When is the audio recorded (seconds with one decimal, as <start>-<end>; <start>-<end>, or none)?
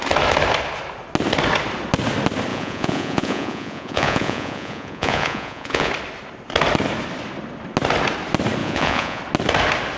0.0-2.5; 5.9-8.6; 9.2-10.0